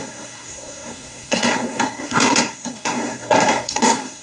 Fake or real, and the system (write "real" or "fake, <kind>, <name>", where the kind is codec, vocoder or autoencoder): fake, codec, SNAC